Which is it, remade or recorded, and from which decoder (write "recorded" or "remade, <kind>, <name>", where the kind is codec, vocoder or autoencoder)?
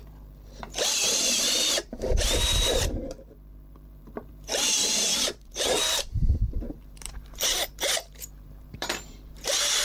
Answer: remade, vocoder, BigVGAN v2